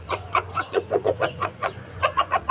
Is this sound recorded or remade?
remade